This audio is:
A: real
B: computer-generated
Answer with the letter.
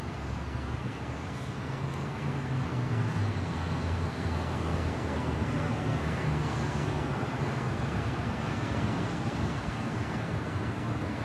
B